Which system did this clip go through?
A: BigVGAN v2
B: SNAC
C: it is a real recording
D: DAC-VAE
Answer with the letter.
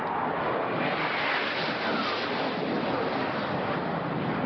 C